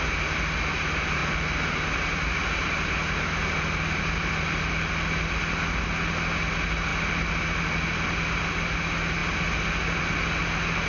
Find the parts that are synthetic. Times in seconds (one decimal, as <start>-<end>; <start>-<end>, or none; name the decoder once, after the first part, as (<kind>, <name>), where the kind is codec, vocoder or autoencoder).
none